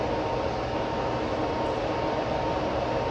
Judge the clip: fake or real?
real